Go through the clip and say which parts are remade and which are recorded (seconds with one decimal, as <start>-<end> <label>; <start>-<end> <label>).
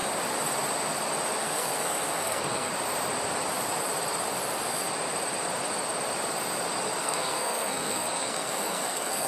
0.0-1.4 recorded; 1.4-2.7 remade; 2.7-7.0 recorded; 7.0-9.3 remade